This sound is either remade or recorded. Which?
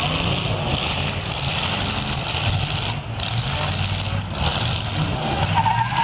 recorded